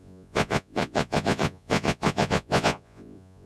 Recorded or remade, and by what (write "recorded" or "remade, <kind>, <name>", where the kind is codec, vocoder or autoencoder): remade, vocoder, Vocos